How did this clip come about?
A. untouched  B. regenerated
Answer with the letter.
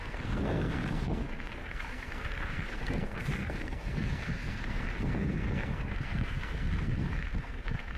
B